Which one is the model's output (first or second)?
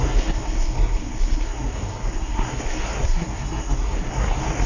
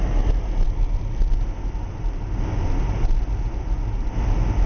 first